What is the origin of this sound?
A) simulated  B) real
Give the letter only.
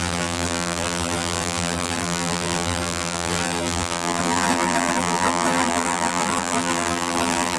A